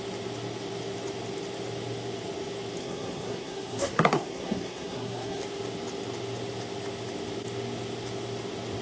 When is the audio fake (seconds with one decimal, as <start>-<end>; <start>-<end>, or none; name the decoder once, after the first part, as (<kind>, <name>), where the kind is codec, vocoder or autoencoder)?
2.8-5.4 (codec, SNAC)